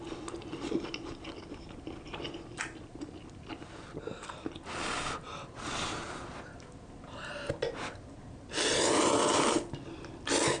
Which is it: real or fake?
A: real